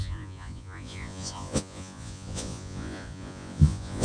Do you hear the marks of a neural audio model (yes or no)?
yes